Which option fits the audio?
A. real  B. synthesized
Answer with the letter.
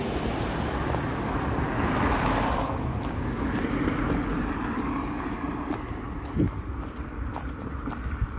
A